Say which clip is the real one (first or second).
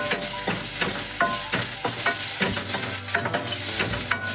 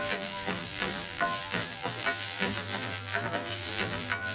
first